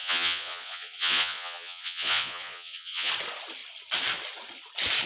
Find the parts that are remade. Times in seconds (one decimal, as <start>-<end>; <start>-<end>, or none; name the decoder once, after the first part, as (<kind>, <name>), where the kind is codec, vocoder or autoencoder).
0.0-3.1 (vocoder, Vocos)